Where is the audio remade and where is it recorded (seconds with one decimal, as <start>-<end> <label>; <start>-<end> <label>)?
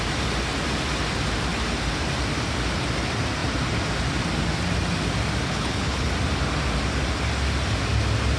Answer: 0.0-5.5 recorded; 5.5-6.1 remade; 6.1-8.4 recorded